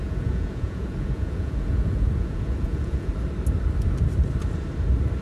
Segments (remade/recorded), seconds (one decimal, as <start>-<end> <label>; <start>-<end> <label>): 0.0-3.1 remade; 3.1-5.2 recorded